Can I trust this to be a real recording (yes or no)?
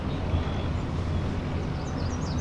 yes